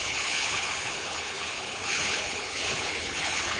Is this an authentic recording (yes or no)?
no